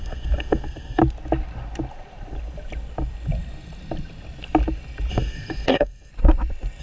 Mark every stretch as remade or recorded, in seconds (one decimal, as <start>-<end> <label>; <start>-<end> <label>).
0.0-1.0 remade; 1.0-5.1 recorded; 5.1-6.1 remade; 6.1-6.8 recorded